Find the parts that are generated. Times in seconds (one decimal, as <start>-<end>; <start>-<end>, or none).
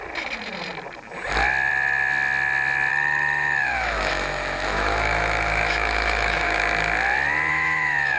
2.9-6.6; 7.5-8.2